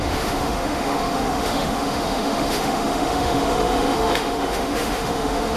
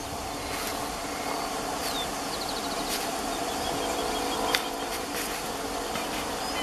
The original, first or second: second